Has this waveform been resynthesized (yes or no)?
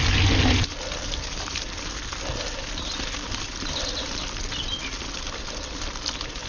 no